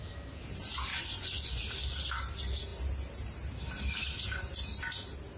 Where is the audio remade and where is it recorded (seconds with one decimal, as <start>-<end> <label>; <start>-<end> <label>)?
0.0-0.9 recorded; 0.9-1.6 remade; 1.6-5.4 recorded